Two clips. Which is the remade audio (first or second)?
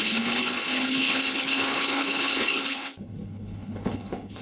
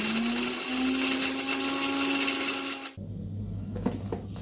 first